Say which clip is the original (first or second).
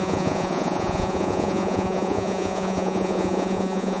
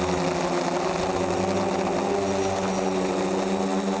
second